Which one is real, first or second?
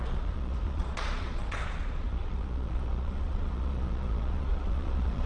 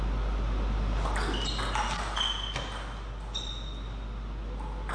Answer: second